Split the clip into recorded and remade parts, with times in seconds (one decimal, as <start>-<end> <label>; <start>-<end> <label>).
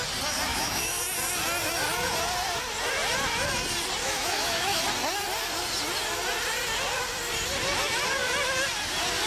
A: 0.0-0.5 recorded; 0.5-1.0 remade; 1.0-4.0 recorded; 4.0-4.8 remade; 4.8-9.3 recorded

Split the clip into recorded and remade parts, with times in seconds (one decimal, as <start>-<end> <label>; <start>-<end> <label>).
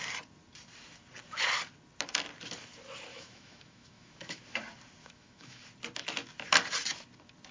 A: 0.0-3.1 recorded; 3.1-4.4 remade; 4.4-5.0 recorded; 5.0-5.6 remade; 5.6-7.5 recorded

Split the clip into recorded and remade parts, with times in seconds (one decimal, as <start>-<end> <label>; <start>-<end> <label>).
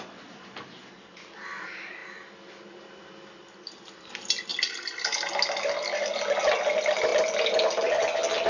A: 0.0-8.5 recorded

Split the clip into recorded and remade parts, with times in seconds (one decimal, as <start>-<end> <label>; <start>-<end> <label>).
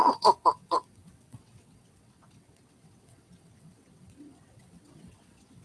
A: 0.0-5.6 remade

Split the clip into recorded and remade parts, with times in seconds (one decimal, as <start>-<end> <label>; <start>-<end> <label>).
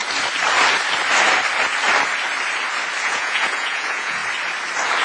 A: 0.0-3.0 recorded; 3.0-4.2 remade; 4.2-5.0 recorded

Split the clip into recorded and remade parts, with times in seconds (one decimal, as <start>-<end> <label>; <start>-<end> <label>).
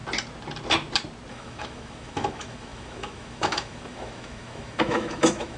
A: 0.0-1.3 recorded; 1.3-5.6 remade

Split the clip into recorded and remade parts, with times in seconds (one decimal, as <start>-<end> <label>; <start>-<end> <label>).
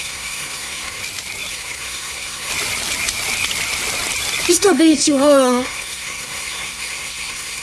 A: 0.0-1.0 remade; 1.0-1.5 recorded; 1.5-2.5 remade; 2.5-4.5 recorded; 4.5-7.6 remade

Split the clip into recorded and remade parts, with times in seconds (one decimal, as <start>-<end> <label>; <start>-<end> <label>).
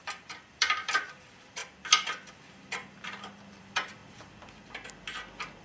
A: 0.0-1.6 remade; 1.6-2.3 recorded; 2.3-4.0 remade; 4.0-5.6 recorded